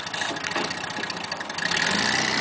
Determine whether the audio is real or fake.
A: real